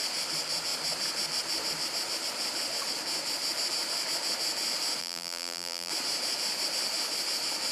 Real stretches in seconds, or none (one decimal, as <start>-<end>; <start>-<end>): 0.0-5.0; 5.9-7.7